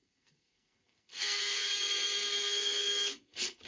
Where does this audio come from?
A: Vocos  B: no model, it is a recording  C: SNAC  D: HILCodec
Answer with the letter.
C